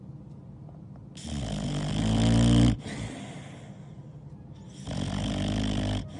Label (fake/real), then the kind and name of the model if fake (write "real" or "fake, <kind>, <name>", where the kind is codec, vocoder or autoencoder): real